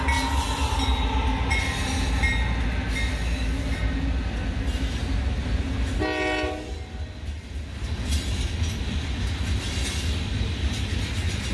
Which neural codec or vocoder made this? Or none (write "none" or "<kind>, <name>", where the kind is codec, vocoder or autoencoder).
none